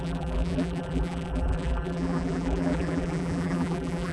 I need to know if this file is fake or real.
fake